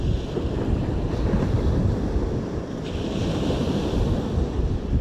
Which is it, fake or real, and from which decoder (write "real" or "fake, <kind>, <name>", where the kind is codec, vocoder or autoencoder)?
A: real